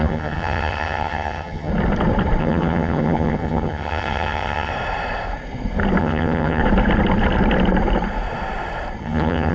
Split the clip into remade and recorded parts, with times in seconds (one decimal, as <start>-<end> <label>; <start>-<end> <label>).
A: 0.0-1.7 remade; 1.7-2.4 recorded; 2.4-4.7 remade; 4.7-6.0 recorded; 6.0-6.6 remade; 6.6-9.0 recorded; 9.0-9.5 remade

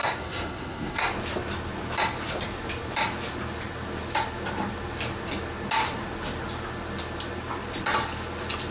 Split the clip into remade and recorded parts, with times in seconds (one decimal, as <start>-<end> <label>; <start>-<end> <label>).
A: 0.0-1.0 remade; 1.0-8.7 recorded

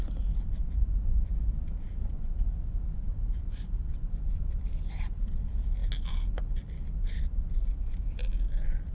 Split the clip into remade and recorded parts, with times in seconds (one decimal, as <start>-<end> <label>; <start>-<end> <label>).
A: 0.0-8.9 recorded

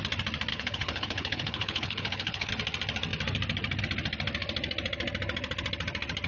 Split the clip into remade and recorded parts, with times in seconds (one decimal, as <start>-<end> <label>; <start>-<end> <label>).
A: 0.0-0.5 recorded; 0.5-2.5 remade; 2.5-6.3 recorded

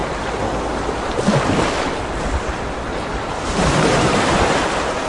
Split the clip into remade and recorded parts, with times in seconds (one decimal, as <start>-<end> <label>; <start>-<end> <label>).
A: 0.0-3.1 recorded; 3.1-4.6 remade; 4.6-5.1 recorded

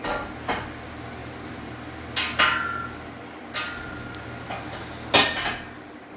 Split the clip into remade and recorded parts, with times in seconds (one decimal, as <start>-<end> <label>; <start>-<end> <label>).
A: 0.0-1.2 recorded; 1.2-1.7 remade; 1.7-6.2 recorded

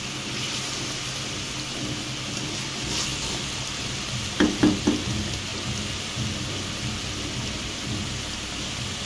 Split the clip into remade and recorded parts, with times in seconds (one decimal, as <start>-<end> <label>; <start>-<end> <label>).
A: 0.0-9.1 recorded